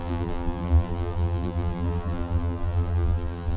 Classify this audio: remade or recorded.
remade